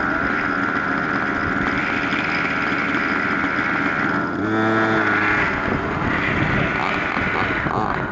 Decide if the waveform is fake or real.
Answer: real